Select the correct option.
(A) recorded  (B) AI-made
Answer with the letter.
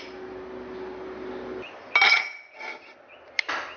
A